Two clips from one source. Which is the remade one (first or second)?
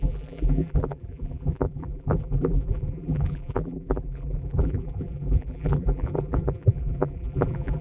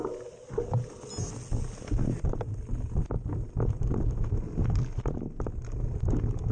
first